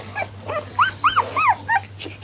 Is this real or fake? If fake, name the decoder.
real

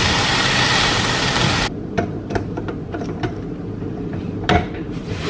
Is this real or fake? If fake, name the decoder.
fake, vocoder, BigVGAN v2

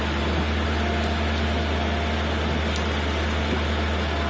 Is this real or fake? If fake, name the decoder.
real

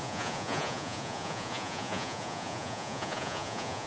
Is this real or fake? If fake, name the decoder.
fake, vocoder, Vocos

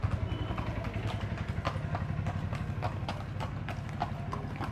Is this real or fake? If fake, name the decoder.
real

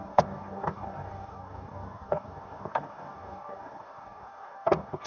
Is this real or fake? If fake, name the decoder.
fake, codec, DAC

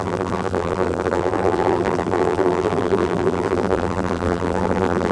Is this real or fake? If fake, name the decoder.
fake, vocoder, BigVGAN v2